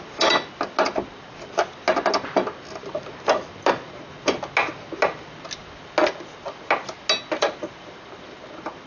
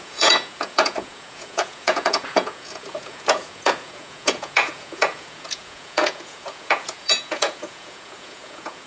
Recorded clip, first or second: first